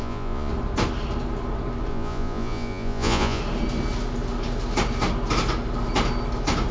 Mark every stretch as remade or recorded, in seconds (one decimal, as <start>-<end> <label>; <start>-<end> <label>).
0.0-0.5 remade; 0.5-1.9 recorded; 1.9-3.4 remade; 3.4-6.7 recorded